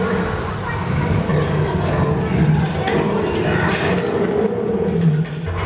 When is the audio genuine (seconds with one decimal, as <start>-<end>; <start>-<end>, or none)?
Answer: 0.0-5.7